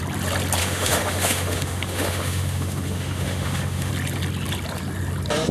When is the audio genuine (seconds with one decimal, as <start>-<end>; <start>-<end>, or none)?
0.0-0.6; 3.9-5.5